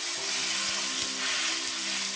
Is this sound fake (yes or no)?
no